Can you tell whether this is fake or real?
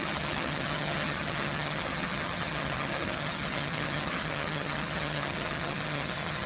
fake